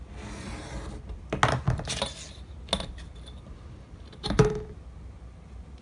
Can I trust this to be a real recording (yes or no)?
yes